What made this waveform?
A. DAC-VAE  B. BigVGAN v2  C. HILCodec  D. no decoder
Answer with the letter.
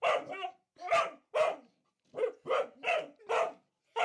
D